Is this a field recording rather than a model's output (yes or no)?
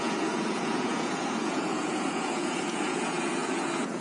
no